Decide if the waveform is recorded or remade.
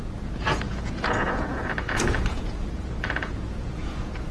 remade